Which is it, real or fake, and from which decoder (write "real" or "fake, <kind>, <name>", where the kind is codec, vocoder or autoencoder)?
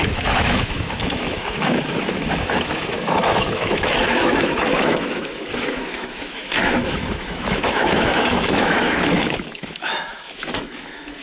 fake, autoencoder, DAC-VAE